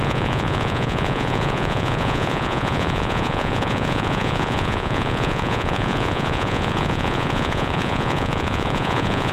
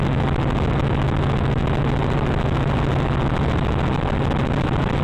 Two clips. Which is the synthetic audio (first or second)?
first